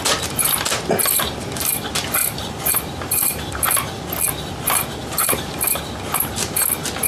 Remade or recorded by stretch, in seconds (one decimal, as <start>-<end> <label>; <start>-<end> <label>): 0.0-2.2 recorded; 2.2-3.5 remade; 3.5-5.0 recorded; 5.0-5.6 remade; 5.6-7.1 recorded